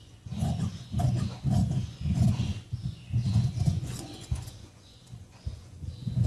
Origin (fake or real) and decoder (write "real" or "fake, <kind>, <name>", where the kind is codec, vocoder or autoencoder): fake, vocoder, Vocos